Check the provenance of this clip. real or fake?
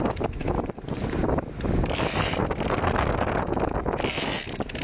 real